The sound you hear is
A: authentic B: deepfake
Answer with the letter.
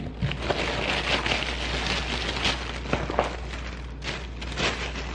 A